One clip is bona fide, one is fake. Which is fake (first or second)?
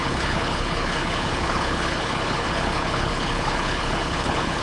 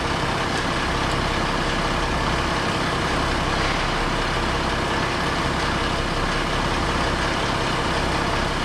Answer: first